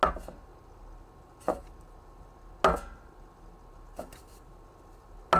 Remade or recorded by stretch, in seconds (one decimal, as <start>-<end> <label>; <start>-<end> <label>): 0.0-5.4 recorded